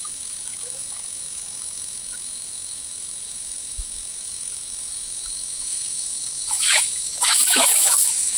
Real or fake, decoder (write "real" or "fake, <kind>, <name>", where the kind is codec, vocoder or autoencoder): fake, autoencoder, DAC-VAE